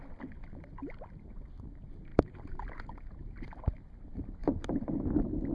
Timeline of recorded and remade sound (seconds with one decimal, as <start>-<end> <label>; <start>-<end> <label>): 0.0-0.8 recorded; 0.8-1.6 remade; 1.6-2.1 recorded; 2.1-3.9 remade; 3.9-4.4 recorded; 4.4-5.0 remade; 5.0-5.5 recorded